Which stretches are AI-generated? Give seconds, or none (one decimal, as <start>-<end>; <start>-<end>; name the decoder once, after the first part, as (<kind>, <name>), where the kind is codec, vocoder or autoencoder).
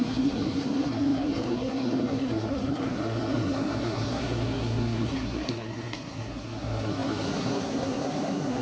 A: 0.0-8.6 (codec, SNAC)